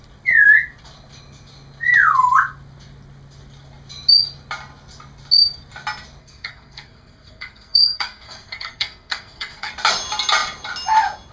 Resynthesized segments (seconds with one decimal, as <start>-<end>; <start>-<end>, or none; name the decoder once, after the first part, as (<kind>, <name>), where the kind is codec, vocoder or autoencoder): 6.2-9.7 (codec, SNAC)